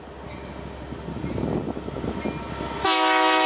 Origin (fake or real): real